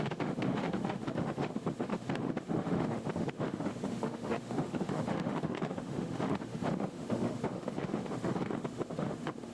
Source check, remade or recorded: remade